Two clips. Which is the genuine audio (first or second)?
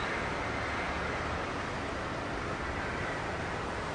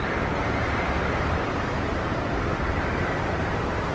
first